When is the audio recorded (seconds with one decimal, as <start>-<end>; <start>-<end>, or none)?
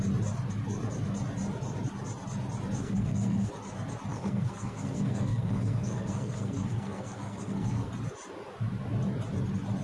0.0-2.8; 3.5-4.1; 7.9-9.8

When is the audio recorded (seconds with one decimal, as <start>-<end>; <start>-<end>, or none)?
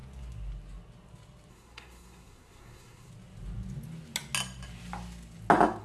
0.0-1.5; 3.1-5.8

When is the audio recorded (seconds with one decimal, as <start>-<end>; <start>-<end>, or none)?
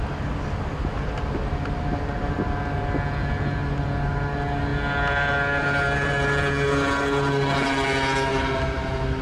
0.0-9.2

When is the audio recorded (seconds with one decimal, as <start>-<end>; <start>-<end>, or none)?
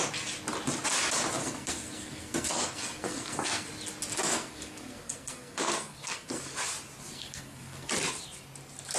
0.0-1.4; 3.7-4.3; 6.6-7.0; 7.9-9.0